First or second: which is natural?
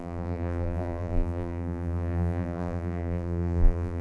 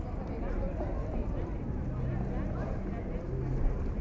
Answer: second